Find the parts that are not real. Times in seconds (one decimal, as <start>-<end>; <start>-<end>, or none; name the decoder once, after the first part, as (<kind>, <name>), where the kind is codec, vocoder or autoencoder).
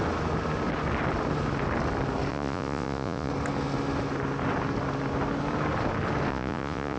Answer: 2.3-3.3 (vocoder, Vocos); 6.3-7.0